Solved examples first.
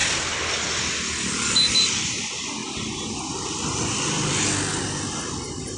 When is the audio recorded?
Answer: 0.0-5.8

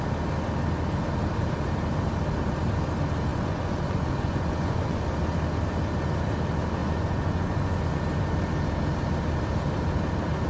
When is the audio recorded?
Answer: 0.0-3.3; 5.0-6.8; 8.0-10.5

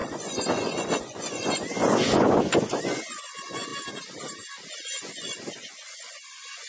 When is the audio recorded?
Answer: 3.7-4.7